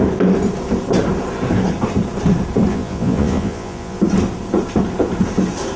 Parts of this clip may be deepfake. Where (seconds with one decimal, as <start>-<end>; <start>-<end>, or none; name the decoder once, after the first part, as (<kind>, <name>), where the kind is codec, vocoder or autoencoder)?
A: 2.7-4.0 (vocoder, Vocos)